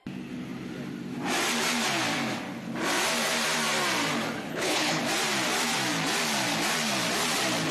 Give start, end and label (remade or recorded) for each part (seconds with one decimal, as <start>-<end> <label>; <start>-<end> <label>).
0.0-4.5 recorded; 4.5-5.0 remade; 5.0-7.7 recorded